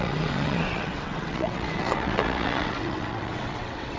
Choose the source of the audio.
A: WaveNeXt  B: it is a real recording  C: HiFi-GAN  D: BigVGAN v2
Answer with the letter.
A